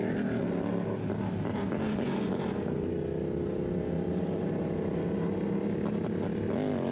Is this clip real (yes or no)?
yes